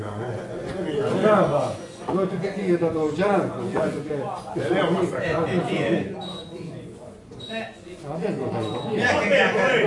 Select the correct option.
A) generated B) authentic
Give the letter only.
A